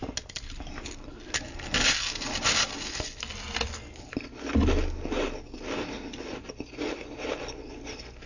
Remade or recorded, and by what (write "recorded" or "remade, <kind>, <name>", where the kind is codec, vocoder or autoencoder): recorded